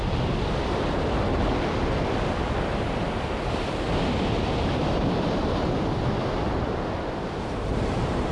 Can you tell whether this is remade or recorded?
recorded